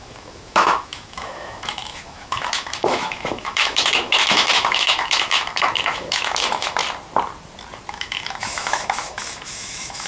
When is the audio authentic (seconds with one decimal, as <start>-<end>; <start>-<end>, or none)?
6.8-7.9